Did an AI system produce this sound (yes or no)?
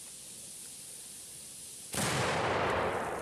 no